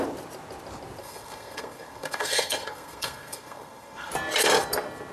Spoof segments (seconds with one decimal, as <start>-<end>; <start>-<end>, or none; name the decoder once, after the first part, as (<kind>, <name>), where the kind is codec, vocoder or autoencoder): 1.0-4.1 (codec, SNAC)